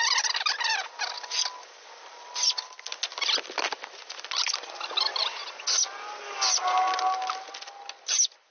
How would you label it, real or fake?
real